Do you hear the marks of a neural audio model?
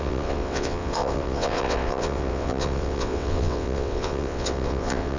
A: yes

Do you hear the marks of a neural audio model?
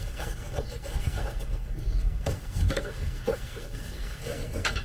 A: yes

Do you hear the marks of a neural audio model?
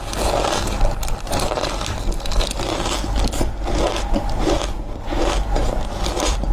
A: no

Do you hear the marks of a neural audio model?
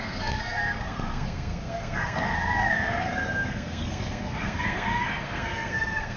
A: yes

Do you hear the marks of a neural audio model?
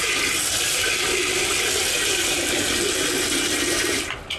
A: no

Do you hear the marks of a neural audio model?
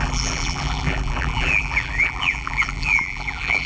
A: yes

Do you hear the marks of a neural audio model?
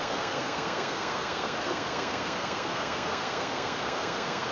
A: yes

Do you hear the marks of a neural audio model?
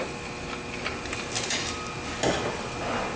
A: no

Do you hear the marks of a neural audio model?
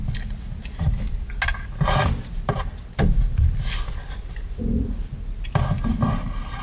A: no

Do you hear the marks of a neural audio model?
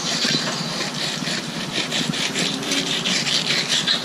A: yes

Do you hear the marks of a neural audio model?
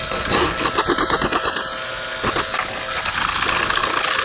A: no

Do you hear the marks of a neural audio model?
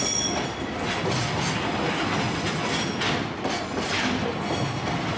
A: no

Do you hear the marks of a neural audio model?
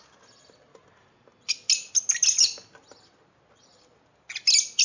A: no